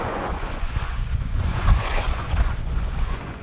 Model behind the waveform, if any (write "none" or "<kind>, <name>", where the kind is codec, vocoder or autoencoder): vocoder, Vocos